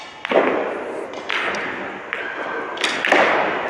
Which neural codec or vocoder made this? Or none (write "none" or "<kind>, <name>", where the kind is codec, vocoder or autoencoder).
none